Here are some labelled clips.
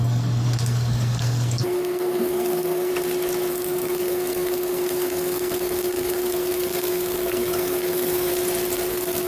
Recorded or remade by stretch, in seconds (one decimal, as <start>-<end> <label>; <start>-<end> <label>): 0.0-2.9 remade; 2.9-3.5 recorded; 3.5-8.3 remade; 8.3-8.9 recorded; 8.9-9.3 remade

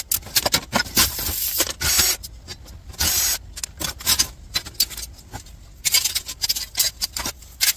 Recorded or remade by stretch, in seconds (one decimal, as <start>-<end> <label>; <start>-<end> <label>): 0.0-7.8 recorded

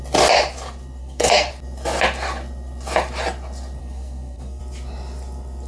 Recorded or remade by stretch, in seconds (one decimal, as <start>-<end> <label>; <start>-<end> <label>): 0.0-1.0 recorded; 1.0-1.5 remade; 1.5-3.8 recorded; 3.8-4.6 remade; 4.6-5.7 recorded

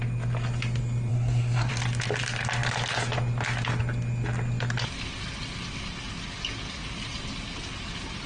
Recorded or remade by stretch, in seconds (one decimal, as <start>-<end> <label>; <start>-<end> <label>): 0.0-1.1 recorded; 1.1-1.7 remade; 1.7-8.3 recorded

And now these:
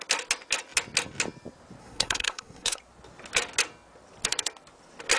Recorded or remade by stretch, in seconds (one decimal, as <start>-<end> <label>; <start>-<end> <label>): 0.0-1.8 recorded; 1.8-2.8 remade; 2.8-5.2 recorded

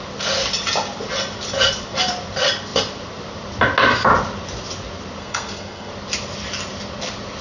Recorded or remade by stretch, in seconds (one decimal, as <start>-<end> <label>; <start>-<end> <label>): 0.0-5.2 recorded; 5.2-5.9 remade; 5.9-7.4 recorded

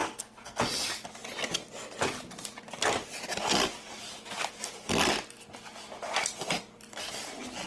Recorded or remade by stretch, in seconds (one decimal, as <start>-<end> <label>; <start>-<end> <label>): 0.0-0.6 remade; 0.6-7.7 recorded

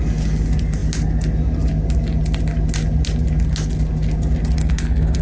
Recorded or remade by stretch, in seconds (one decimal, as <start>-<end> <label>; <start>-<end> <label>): 0.0-4.6 recorded; 4.6-5.2 remade